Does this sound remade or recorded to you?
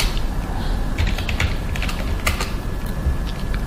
recorded